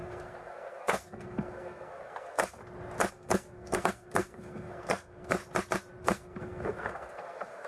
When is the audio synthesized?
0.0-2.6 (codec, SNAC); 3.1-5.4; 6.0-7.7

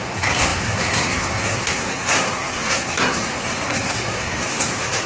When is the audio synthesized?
0.0-5.1 (codec, SNAC)

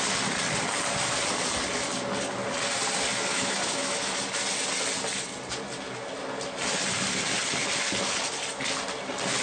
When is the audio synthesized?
3.3-4.0 (autoencoder, DAC-VAE)

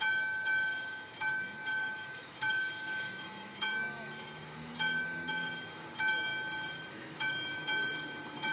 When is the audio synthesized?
0.0-6.3 (autoencoder, DAC-VAE); 6.9-7.7

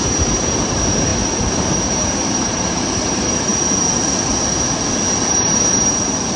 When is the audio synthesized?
0.0-3.5 (vocoder, BigVGAN v2); 5.2-6.4